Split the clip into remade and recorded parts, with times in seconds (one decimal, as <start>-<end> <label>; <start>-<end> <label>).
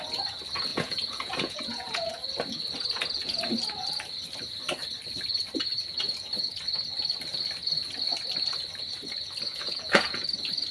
0.0-0.7 recorded; 0.7-2.1 remade; 2.1-9.5 recorded; 9.5-10.2 remade; 10.2-10.7 recorded